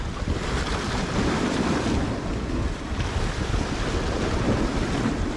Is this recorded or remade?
recorded